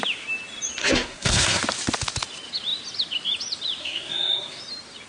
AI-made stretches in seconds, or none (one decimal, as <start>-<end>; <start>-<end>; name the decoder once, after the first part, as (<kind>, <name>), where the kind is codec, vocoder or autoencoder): 0.8-1.6 (codec, SNAC); 3.8-4.6